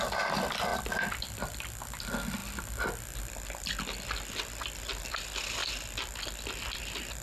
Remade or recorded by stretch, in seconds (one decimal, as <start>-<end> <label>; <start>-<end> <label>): 0.0-0.7 recorded; 0.7-2.0 remade; 2.0-7.2 recorded